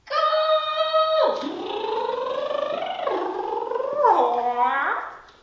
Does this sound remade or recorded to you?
recorded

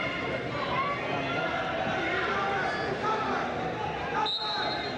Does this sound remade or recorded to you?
recorded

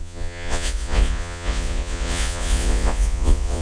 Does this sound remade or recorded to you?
remade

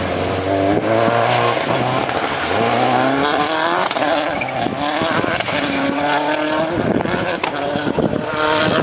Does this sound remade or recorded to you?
recorded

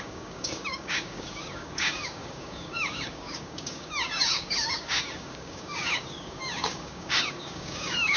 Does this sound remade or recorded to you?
remade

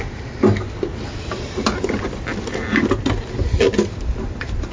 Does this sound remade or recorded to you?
recorded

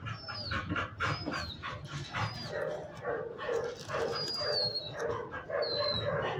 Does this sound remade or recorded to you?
recorded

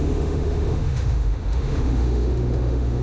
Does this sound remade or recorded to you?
remade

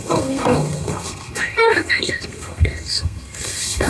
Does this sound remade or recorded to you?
remade